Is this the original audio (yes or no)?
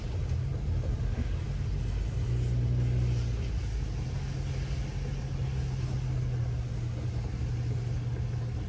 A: yes